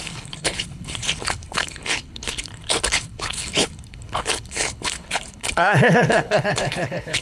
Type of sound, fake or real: fake